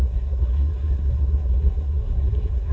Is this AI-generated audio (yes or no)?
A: yes